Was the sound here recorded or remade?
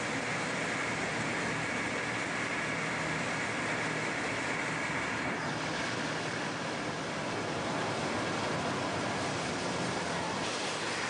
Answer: recorded